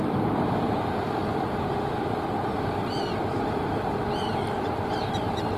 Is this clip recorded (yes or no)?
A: no